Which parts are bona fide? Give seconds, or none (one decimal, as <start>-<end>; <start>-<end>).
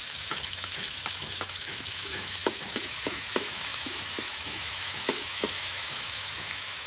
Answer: none